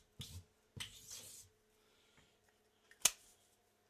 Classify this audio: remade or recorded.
recorded